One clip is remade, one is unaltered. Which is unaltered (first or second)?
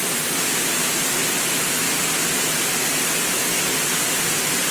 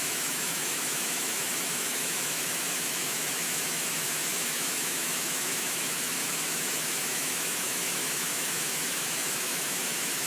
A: first